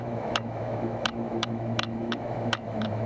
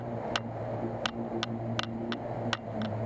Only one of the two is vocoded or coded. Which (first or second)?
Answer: first